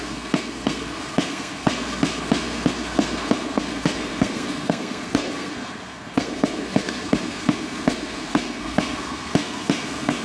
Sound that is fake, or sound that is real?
fake